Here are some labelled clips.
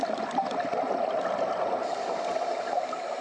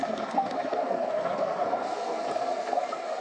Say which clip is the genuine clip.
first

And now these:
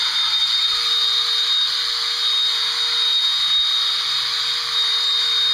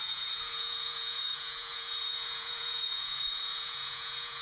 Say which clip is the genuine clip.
first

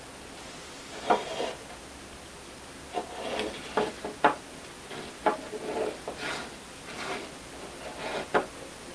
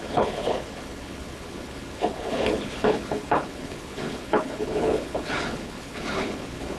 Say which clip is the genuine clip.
first